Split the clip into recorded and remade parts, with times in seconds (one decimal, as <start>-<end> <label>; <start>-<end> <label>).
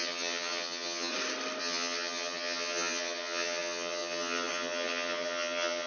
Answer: 0.0-1.1 remade; 1.1-1.6 recorded; 1.6-5.9 remade